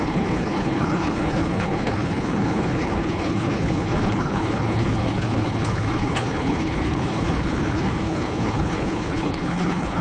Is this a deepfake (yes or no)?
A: yes